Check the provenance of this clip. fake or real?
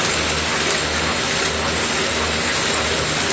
real